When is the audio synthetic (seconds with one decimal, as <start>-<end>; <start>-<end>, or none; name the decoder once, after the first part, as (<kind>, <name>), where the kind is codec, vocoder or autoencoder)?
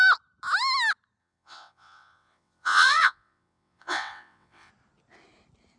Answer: 1.2-4.7 (vocoder, WaveNeXt)